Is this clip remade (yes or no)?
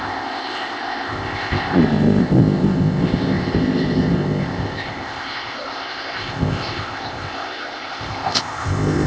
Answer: yes